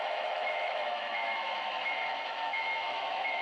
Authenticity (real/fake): fake